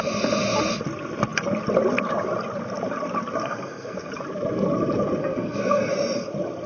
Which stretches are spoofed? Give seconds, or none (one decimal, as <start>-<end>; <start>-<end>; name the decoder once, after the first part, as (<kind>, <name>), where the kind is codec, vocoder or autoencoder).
3.4-4.1 (codec, SNAC); 5.2-5.9